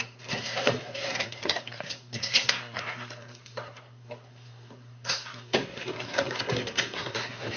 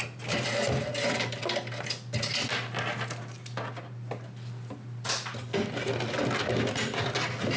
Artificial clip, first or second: first